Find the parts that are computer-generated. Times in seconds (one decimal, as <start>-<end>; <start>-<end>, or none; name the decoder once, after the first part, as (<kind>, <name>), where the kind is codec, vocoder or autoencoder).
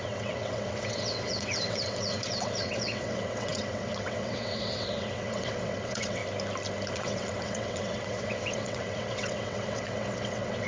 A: 0.0-6.2 (vocoder, WaveNeXt); 6.9-10.7